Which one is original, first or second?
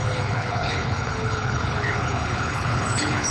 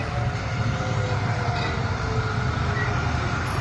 second